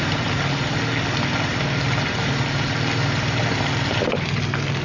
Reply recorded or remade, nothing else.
recorded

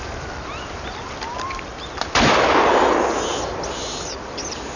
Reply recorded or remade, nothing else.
recorded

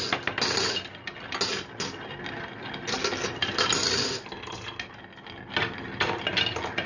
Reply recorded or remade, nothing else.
recorded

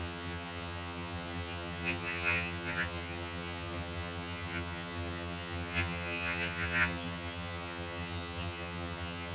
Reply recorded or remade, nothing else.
remade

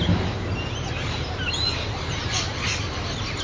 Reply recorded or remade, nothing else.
recorded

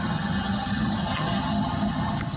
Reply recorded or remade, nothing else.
remade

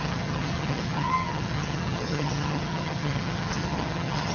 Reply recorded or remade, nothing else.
remade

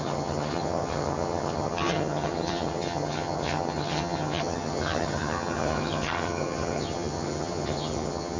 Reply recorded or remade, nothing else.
remade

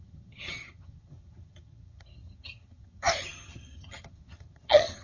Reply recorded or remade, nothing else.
remade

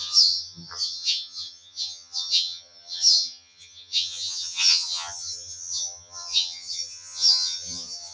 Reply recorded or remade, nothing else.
remade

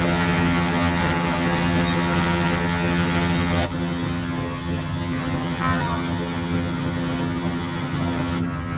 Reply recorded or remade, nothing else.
remade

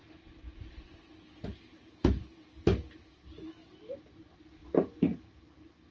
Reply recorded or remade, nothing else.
recorded